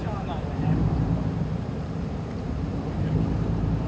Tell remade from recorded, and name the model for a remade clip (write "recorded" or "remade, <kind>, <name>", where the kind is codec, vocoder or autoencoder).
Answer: remade, vocoder, BigVGAN v2